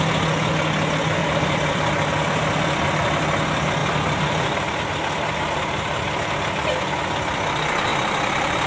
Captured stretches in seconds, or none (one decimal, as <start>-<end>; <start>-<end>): 0.0-1.2; 1.9-3.8; 7.5-7.9